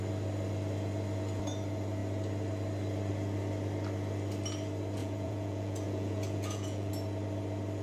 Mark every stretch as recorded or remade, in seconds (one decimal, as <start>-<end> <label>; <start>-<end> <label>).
0.0-5.0 recorded; 5.0-6.9 remade; 6.9-7.8 recorded